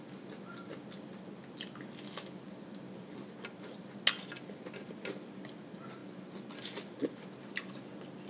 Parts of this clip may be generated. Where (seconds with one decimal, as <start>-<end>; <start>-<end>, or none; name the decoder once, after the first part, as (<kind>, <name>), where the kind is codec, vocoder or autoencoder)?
none